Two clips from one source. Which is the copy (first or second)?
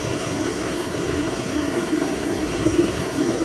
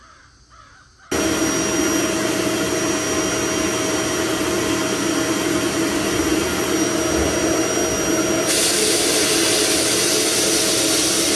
first